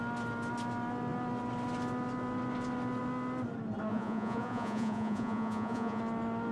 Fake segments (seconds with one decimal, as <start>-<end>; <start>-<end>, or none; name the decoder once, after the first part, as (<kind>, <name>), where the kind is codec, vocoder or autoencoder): 3.9-6.0 (vocoder, Vocos)